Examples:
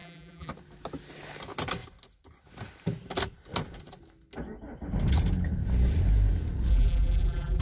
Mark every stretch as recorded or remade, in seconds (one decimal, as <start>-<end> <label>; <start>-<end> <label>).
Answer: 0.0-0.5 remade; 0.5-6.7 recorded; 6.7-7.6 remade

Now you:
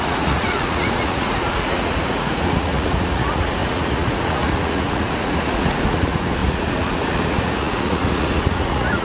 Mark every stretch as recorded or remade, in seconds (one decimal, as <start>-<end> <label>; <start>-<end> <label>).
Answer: 0.0-9.0 remade

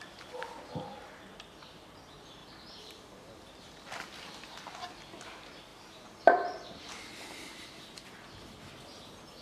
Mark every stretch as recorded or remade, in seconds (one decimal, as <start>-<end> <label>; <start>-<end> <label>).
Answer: 0.0-2.4 recorded; 2.4-3.1 remade; 3.1-5.7 recorded; 5.7-6.9 remade; 6.9-9.4 recorded

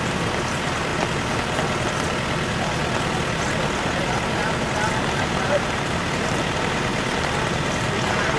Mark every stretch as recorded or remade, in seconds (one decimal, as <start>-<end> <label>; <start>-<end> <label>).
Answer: 0.0-0.9 remade; 0.9-4.1 recorded; 4.1-6.9 remade; 6.9-7.5 recorded; 7.5-8.4 remade

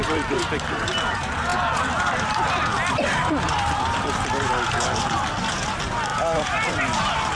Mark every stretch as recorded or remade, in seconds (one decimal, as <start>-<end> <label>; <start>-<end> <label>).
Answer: 0.0-0.9 remade; 0.9-1.5 recorded; 1.5-2.9 remade; 2.9-6.1 recorded; 6.1-7.0 remade; 7.0-7.4 recorded